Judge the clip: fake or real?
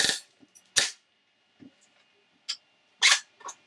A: real